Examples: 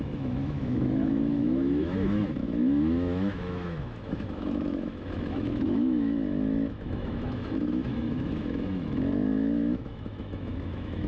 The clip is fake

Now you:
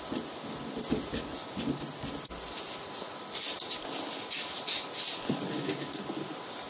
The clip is real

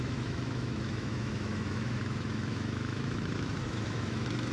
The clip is fake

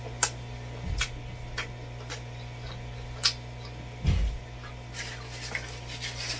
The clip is real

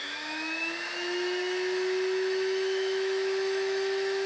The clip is fake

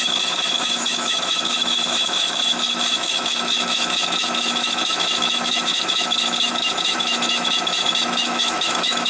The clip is fake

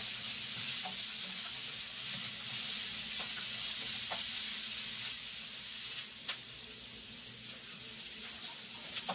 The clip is real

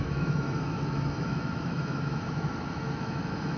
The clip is fake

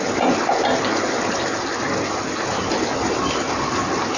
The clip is real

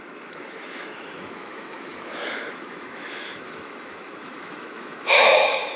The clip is fake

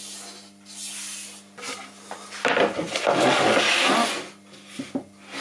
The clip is real